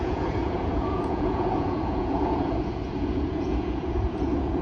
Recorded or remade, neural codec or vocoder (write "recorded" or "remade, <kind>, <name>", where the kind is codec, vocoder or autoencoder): remade, vocoder, Vocos